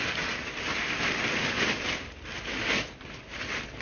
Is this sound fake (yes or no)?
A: no